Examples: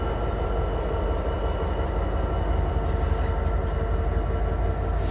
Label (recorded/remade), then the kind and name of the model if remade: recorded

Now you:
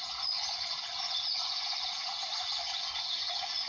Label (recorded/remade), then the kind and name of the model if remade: remade, vocoder, Vocos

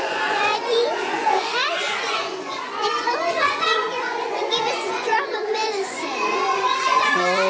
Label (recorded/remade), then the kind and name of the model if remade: remade, vocoder, Vocos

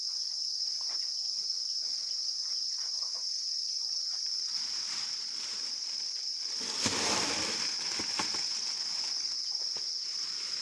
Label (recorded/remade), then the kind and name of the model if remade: recorded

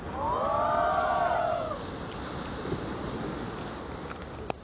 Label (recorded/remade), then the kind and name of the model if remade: recorded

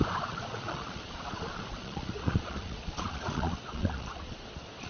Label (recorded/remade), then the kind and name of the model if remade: remade, vocoder, Vocos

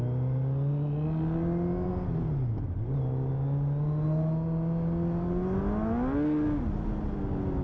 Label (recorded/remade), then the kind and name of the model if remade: recorded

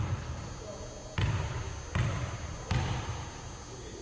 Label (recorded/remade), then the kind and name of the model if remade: recorded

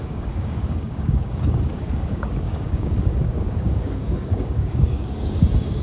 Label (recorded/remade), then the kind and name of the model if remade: remade, codec, DAC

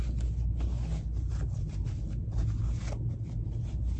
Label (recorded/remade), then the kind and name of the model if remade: recorded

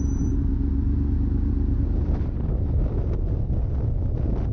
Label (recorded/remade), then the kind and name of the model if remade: recorded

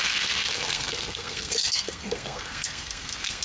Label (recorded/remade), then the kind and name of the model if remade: remade, codec, SNAC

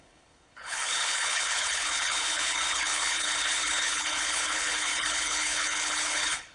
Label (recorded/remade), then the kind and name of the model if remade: remade, codec, HILCodec